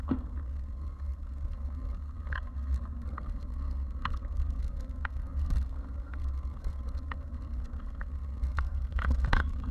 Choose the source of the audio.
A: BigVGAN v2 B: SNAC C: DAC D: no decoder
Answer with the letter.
B